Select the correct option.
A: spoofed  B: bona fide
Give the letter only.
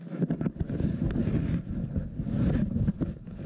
B